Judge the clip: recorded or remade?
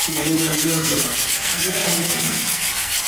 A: remade